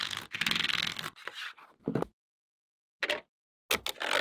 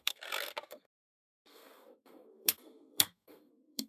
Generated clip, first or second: second